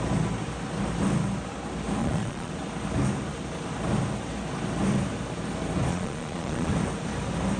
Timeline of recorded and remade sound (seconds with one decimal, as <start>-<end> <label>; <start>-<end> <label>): 0.0-2.0 recorded; 2.0-2.5 remade; 2.5-5.9 recorded; 5.9-6.7 remade; 6.7-7.6 recorded